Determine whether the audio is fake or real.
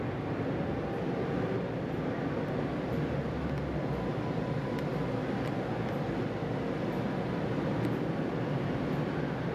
real